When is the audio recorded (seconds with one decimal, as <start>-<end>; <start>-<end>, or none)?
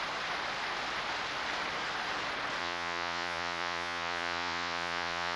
0.0-2.6